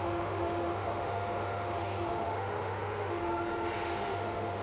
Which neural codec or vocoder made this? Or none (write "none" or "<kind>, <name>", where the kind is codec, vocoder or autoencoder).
autoencoder, DAC-VAE